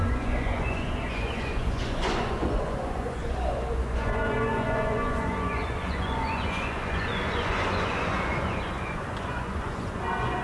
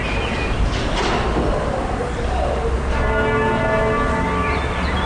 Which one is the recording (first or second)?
second